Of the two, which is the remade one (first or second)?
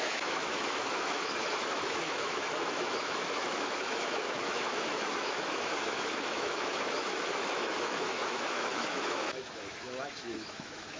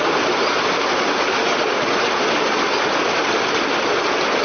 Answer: first